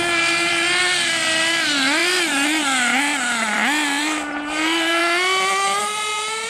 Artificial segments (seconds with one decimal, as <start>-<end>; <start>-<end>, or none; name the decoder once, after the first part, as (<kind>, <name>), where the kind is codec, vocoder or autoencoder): 0.0-5.0 (vocoder, BigVGAN v2); 5.8-6.5